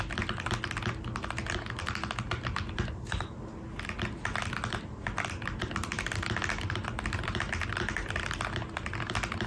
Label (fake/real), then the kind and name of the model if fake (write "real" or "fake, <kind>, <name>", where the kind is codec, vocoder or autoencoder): real